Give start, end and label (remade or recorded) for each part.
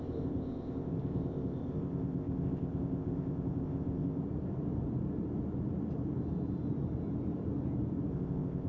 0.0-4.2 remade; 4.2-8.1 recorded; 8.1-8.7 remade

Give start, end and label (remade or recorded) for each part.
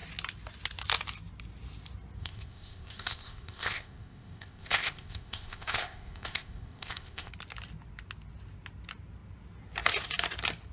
0.0-2.2 recorded; 2.2-7.3 remade; 7.3-10.7 recorded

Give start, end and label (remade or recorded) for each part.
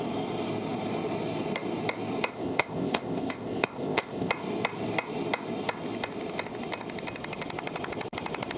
0.0-2.3 recorded; 2.3-4.3 remade; 4.3-8.6 recorded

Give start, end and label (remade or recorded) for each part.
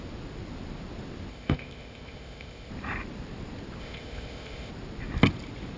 0.0-1.3 recorded; 1.3-2.7 remade; 2.7-3.8 recorded; 3.8-4.7 remade; 4.7-5.8 recorded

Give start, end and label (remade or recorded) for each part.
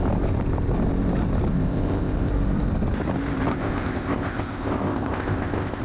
0.0-1.5 recorded; 1.5-2.3 remade; 2.3-3.5 recorded; 3.5-5.8 remade